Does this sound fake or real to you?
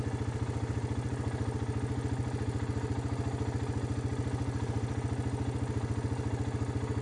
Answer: real